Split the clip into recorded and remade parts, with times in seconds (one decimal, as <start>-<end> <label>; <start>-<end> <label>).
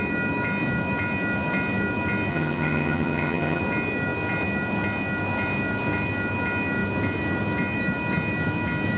0.0-2.3 recorded; 2.3-3.6 remade; 3.6-9.0 recorded